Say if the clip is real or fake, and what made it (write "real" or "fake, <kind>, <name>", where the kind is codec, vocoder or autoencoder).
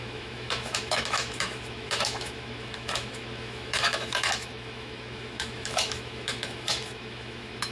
fake, autoencoder, DAC-VAE